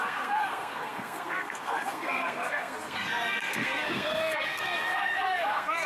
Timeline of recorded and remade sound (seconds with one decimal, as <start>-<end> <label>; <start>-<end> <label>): 0.0-5.9 remade